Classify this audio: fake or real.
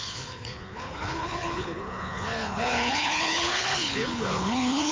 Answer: fake